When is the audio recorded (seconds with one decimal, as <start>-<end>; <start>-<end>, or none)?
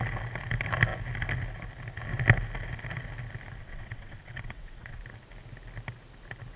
0.0-3.6; 5.0-6.6